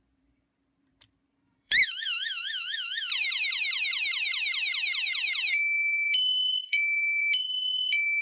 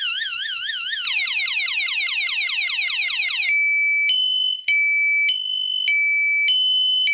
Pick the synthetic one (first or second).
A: first